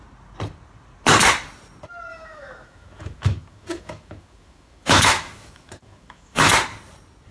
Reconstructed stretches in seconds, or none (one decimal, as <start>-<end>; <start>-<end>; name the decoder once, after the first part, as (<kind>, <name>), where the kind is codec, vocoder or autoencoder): 2.1-6.5 (autoencoder, DAC-VAE)